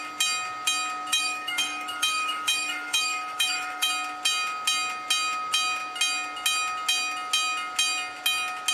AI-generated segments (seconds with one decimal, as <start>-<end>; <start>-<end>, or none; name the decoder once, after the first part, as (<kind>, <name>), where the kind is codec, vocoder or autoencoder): 1.1-3.9 (autoencoder, DAC-VAE)